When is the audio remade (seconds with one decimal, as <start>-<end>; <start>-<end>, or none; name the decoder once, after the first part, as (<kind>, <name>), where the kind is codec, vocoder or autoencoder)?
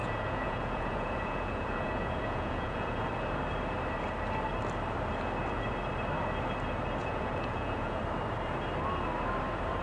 0.0-3.0 (vocoder, Vocos); 7.0-8.0